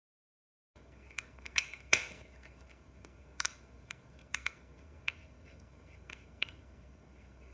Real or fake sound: fake